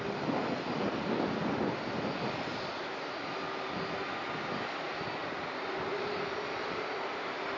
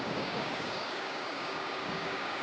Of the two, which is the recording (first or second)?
first